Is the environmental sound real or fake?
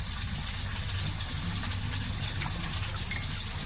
real